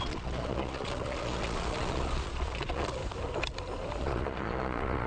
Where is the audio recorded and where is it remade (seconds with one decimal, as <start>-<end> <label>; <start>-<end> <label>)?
0.0-3.0 remade; 3.0-4.0 recorded; 4.0-5.1 remade